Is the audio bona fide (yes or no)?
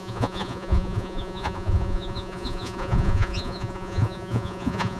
no